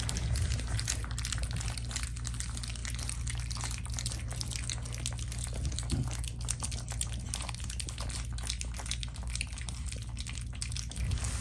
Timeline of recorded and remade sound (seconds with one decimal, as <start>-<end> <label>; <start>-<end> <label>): 0.0-11.4 recorded